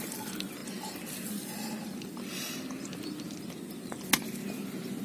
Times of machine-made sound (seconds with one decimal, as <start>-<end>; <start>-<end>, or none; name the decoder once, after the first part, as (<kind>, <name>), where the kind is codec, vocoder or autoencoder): none